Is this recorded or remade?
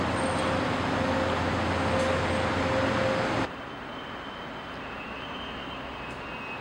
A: recorded